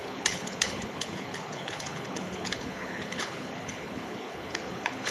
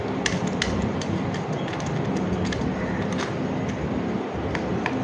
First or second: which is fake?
first